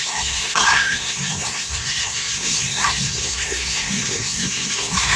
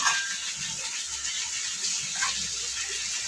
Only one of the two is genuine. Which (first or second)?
second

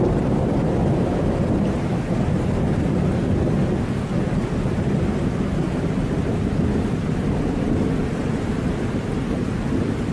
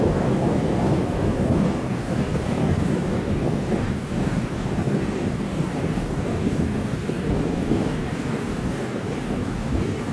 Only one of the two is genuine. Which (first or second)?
first